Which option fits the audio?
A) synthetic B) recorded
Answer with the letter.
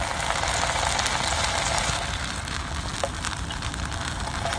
B